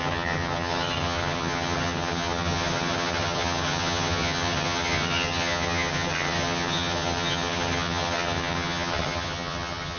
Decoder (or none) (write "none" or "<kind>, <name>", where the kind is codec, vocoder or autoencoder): vocoder, HiFi-GAN